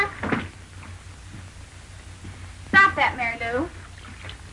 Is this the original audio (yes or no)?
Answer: yes